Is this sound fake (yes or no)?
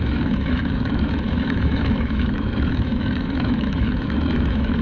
yes